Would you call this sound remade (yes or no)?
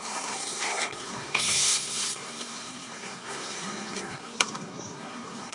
yes